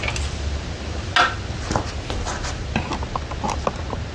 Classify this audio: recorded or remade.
recorded